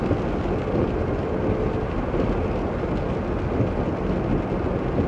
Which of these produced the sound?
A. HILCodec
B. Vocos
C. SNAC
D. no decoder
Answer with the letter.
D